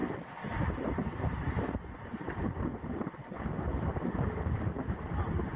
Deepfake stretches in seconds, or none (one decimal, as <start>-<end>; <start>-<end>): 0.7-1.1; 4.5-5.6